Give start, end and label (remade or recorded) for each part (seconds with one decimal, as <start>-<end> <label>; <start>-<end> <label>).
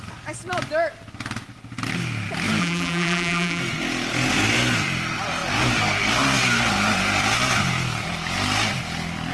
0.0-2.6 recorded; 2.6-3.6 remade; 3.6-9.3 recorded